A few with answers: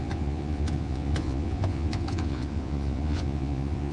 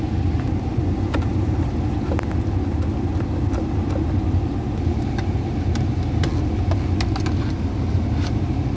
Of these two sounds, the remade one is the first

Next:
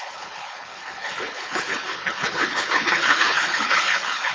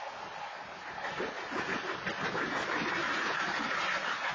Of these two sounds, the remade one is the first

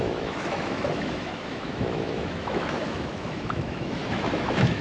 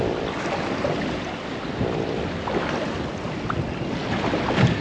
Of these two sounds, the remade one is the first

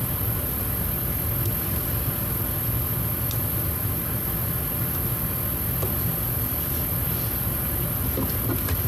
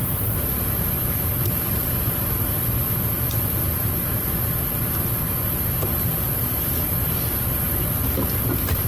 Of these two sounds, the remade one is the second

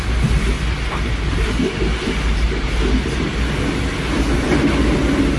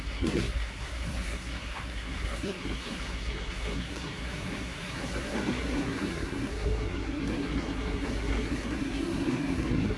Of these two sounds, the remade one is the second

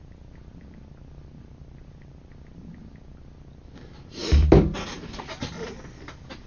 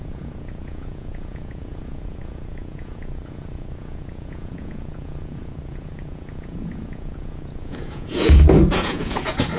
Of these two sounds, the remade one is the second